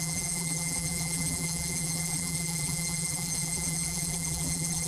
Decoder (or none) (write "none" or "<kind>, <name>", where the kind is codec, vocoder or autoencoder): vocoder, BigVGAN v2